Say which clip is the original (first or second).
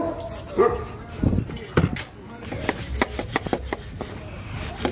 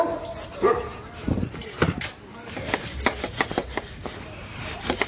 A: first